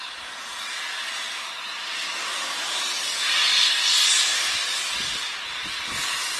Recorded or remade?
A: recorded